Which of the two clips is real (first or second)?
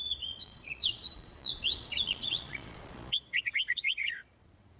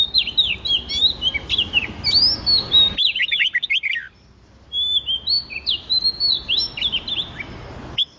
second